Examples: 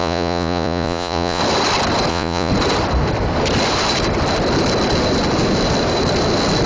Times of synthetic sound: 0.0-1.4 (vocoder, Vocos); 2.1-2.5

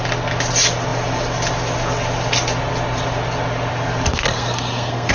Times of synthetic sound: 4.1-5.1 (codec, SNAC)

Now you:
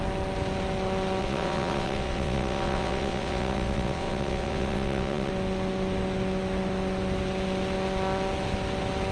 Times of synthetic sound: 1.2-5.3 (vocoder, WaveNeXt)